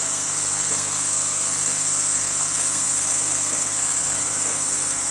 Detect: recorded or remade remade